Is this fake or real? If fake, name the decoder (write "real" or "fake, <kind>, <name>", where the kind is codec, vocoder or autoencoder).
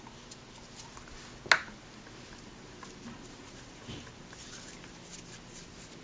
real